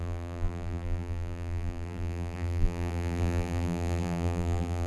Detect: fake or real fake